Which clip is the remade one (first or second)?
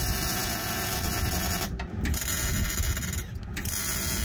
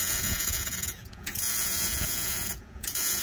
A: second